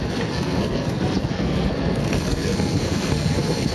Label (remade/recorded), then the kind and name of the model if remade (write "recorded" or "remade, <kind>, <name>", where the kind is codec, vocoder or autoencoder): remade, codec, SNAC